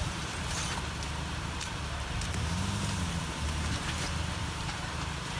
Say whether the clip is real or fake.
fake